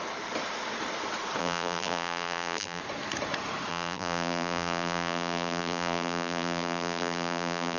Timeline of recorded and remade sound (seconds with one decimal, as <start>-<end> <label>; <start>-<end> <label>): 0.0-1.4 recorded; 1.4-2.8 remade; 2.8-3.7 recorded; 3.7-7.8 remade